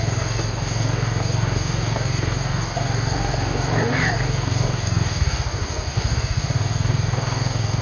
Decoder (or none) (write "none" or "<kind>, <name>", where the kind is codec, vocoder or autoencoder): codec, DAC